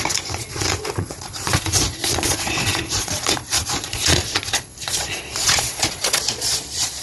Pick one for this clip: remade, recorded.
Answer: remade